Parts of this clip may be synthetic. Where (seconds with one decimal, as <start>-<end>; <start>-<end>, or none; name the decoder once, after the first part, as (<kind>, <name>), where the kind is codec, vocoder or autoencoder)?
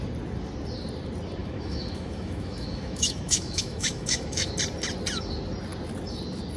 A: 1.4-4.5 (autoencoder, DAC-VAE)